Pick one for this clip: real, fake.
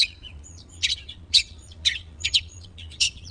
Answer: fake